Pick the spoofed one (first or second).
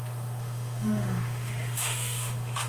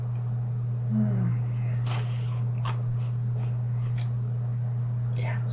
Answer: first